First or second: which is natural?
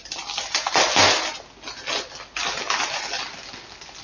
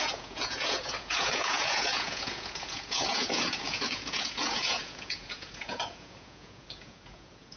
first